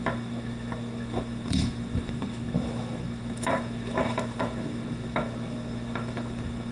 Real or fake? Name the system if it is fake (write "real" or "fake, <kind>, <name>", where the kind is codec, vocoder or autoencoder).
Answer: fake, autoencoder, DAC-VAE